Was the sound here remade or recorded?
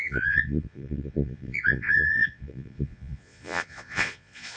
remade